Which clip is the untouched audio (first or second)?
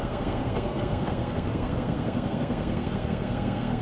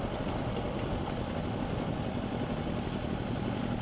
second